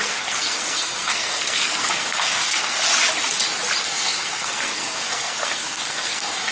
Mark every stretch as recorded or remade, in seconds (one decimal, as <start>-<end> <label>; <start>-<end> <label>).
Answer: 0.0-2.9 remade; 2.9-3.8 recorded; 3.8-6.5 remade